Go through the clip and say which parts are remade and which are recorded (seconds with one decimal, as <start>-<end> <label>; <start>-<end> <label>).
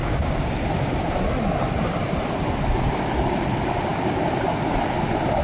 0.0-0.5 remade; 0.5-5.4 recorded